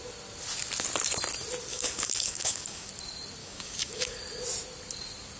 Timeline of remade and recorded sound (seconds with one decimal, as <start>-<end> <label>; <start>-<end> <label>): 0.0-1.7 recorded; 1.7-2.9 remade; 2.9-3.4 recorded; 3.4-4.2 remade; 4.2-5.4 recorded